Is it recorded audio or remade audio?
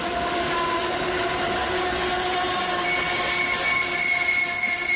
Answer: recorded